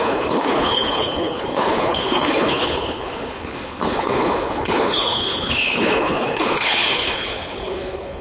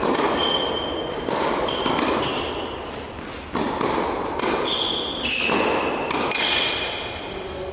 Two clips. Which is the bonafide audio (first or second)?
second